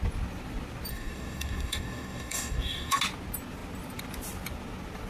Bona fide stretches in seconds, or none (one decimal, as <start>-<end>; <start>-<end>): 0.0-0.9; 3.0-5.1